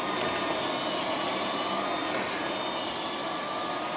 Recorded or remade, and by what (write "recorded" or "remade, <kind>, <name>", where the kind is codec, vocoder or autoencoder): recorded